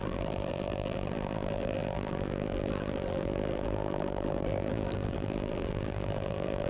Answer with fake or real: fake